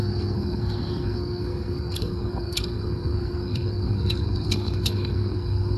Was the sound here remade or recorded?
remade